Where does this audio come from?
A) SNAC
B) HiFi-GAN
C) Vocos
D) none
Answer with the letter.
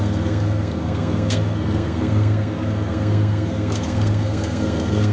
A